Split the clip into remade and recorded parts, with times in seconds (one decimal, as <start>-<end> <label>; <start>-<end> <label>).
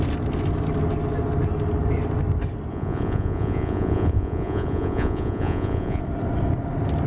0.0-2.7 recorded; 2.7-6.0 remade; 6.0-7.1 recorded